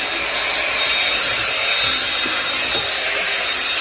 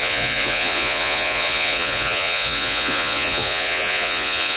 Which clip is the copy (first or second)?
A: second